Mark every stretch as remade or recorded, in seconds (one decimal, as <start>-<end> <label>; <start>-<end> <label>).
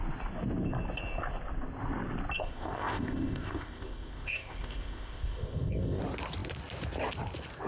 0.0-2.4 recorded; 2.4-6.0 remade; 6.0-7.7 recorded